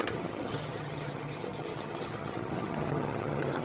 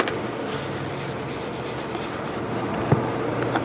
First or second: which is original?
second